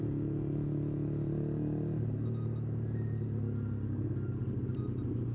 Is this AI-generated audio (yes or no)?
no